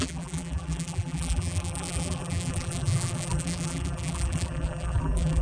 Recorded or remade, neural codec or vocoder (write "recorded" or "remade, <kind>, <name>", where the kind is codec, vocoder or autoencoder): remade, vocoder, BigVGAN v2